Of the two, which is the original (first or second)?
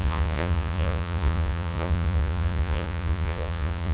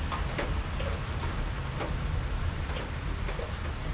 second